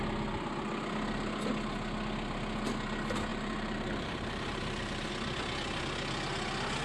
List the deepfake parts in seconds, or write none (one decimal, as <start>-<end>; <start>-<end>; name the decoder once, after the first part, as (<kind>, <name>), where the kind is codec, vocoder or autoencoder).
3.3-5.1 (vocoder, BigVGAN v2)